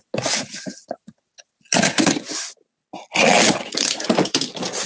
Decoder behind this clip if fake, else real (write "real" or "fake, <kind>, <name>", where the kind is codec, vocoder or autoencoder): real